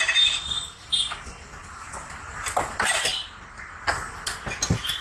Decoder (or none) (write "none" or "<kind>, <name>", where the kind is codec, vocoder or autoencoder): none